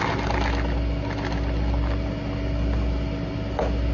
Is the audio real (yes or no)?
yes